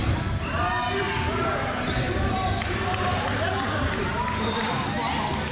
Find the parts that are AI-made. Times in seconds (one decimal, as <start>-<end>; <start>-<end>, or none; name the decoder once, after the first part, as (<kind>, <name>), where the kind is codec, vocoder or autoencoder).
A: 1.4-4.7 (vocoder, BigVGAN v2)